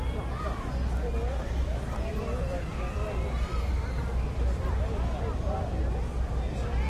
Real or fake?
real